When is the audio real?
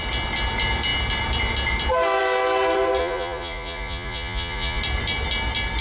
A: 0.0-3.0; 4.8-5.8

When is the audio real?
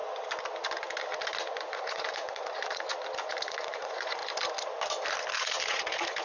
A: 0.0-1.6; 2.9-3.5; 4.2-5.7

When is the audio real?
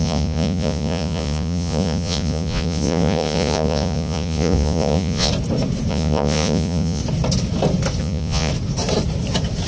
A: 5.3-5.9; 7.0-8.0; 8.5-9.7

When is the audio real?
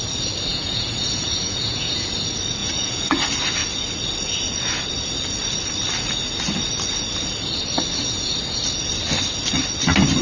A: 0.0-0.5; 2.1-2.6; 3.2-10.2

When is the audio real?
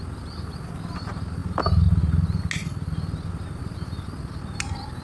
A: 0.0-5.0